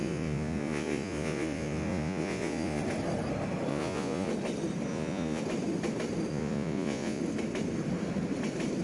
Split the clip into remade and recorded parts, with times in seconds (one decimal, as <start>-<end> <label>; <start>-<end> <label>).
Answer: 0.0-2.8 remade; 2.8-3.7 recorded; 3.7-4.3 remade; 4.3-4.9 recorded; 4.9-5.4 remade; 5.4-6.3 recorded; 6.3-7.2 remade; 7.2-8.8 recorded